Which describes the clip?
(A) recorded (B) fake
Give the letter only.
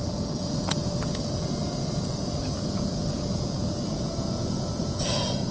B